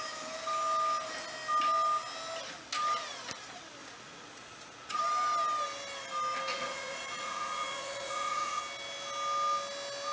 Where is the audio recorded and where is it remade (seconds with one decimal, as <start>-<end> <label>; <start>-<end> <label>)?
0.0-3.8 recorded; 3.8-5.0 remade; 5.0-6.5 recorded; 6.5-8.6 remade; 8.6-10.1 recorded